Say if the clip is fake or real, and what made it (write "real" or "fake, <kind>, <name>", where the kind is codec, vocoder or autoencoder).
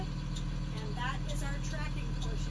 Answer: real